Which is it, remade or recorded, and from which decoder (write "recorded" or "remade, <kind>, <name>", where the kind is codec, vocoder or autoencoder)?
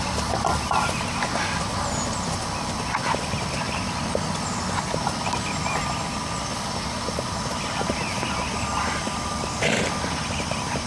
recorded